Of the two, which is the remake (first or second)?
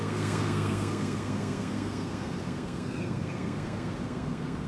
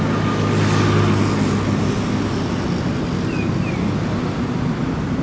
first